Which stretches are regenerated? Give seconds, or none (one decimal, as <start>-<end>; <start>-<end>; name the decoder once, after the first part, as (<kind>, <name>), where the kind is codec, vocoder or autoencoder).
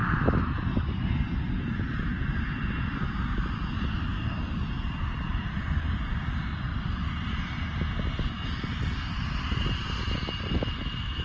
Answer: none